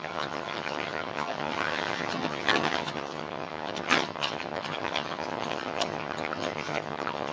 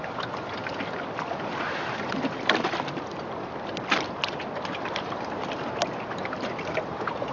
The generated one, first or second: first